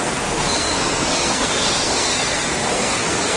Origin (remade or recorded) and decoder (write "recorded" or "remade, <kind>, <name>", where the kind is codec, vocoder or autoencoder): remade, codec, SNAC